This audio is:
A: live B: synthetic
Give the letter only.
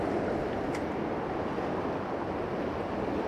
A